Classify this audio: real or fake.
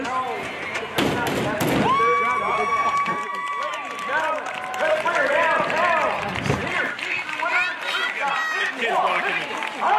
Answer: real